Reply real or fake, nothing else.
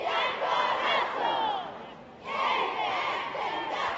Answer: real